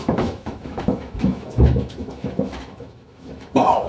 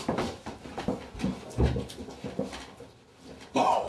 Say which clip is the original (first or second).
second